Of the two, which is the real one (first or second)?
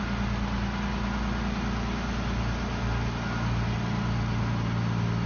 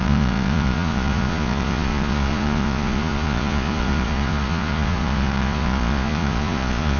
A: first